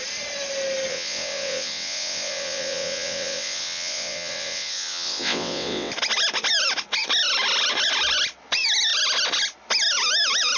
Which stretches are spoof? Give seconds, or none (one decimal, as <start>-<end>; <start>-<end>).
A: 0.9-5.9